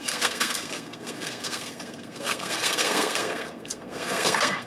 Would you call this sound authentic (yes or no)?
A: no